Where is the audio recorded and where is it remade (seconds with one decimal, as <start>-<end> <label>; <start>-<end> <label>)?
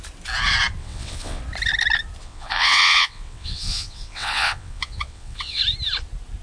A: 0.0-0.8 recorded; 0.8-1.4 remade; 1.4-2.2 recorded; 2.2-5.6 remade; 5.6-6.4 recorded